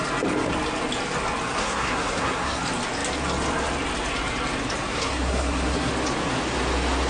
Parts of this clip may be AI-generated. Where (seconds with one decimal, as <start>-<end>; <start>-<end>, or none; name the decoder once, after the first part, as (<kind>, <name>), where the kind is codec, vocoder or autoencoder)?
1.6-2.6 (codec, SNAC); 4.9-5.9